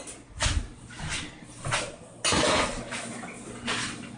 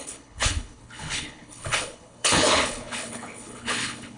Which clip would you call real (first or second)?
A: first